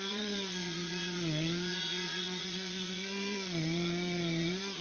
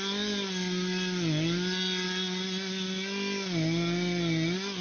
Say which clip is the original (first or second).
second